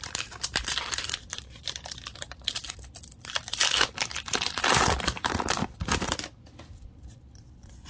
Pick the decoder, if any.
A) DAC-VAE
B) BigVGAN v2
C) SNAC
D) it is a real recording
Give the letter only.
B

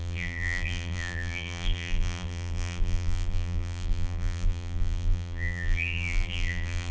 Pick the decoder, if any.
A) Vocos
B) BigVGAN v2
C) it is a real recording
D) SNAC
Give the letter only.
B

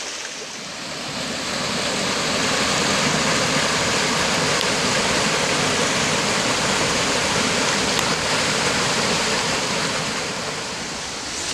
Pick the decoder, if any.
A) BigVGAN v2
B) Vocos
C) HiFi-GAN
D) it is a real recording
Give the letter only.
D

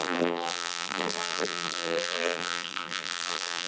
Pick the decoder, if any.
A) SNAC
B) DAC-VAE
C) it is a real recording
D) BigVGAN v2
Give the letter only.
D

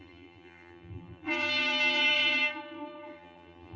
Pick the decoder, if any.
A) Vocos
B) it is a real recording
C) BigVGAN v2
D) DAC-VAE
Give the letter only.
C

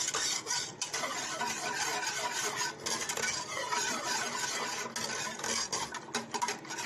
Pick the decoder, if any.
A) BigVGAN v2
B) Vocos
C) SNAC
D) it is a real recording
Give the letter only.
D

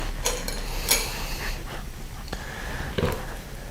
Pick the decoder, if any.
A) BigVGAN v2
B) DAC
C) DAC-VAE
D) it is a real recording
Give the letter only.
D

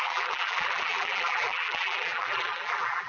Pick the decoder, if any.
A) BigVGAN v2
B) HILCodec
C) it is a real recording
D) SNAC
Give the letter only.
A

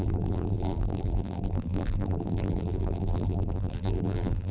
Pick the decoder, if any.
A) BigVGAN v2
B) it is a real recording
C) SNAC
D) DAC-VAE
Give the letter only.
A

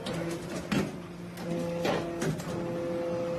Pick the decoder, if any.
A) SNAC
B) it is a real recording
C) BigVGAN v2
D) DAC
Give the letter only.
B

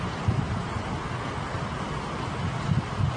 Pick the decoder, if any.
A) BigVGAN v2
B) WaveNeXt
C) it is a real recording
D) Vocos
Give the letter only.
C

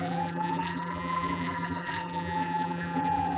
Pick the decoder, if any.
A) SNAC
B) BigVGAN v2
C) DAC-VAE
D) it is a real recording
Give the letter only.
B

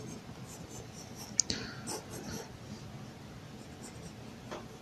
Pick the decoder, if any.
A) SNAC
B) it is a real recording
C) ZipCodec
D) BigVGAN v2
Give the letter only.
B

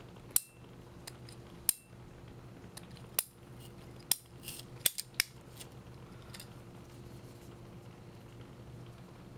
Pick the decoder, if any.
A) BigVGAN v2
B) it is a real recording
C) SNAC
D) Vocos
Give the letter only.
B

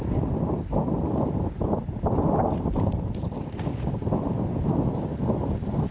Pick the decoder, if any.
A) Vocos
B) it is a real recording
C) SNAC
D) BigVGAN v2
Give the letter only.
B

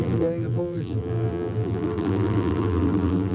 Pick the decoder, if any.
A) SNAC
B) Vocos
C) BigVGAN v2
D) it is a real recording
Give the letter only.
C